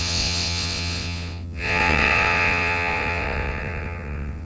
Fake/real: fake